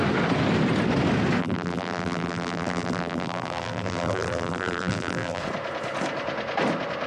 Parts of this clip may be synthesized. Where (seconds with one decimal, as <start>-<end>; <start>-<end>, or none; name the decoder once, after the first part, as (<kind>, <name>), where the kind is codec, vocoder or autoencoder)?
1.4-5.4 (vocoder, BigVGAN v2)